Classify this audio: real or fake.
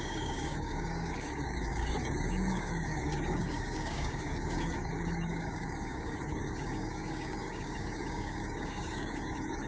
fake